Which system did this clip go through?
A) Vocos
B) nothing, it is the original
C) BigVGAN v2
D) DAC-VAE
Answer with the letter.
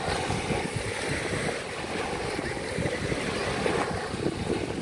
B